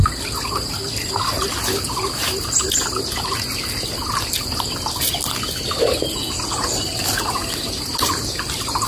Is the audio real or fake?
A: real